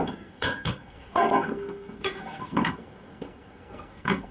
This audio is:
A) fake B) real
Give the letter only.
A